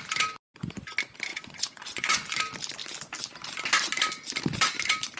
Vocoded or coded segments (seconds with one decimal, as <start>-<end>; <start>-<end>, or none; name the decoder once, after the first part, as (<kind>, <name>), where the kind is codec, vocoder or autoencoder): 1.3-2.4 (vocoder, Vocos)